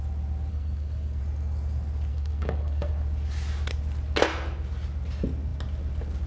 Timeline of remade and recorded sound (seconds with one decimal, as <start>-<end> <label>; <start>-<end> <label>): 0.0-0.5 recorded; 0.5-1.2 remade; 1.2-2.1 recorded; 2.1-2.9 remade; 2.9-6.3 recorded